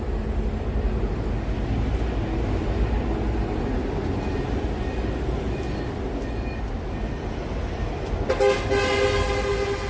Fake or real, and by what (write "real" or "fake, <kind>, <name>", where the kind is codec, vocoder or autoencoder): real